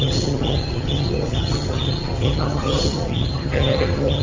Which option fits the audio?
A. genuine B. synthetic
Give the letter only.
B